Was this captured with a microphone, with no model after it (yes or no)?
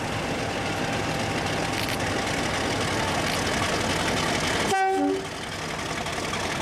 yes